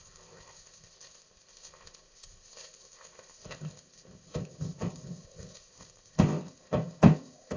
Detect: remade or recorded remade